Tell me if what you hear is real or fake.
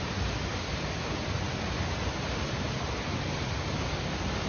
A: real